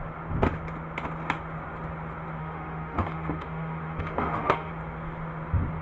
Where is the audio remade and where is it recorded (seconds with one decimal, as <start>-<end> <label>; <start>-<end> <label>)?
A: 0.0-2.4 recorded; 2.4-4.7 remade; 4.7-5.8 recorded